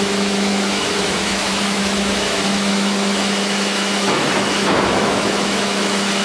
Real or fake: fake